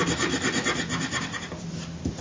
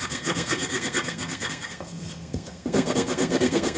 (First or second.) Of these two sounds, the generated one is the second